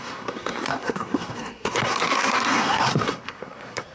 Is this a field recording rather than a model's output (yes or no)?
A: no